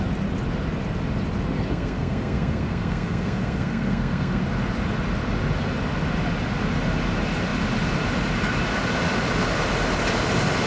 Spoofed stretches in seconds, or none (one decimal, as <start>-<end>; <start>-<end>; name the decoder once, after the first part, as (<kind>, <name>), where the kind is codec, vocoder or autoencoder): 1.5-4.4 (codec, SNAC)